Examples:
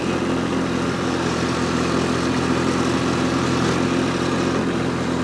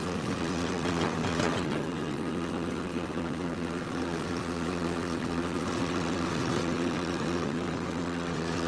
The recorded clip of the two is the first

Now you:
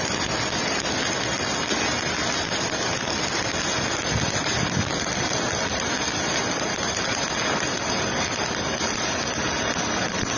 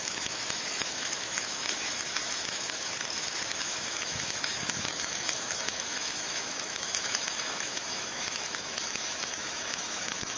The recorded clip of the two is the first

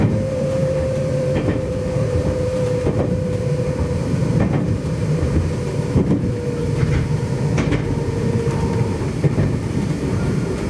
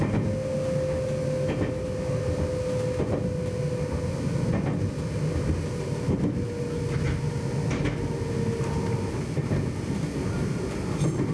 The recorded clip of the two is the second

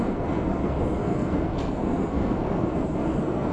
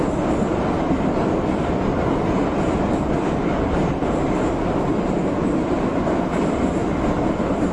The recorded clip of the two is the second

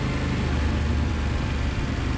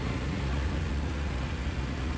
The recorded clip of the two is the first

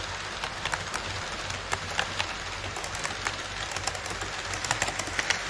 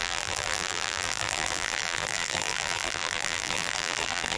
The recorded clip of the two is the first